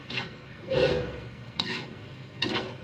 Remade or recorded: remade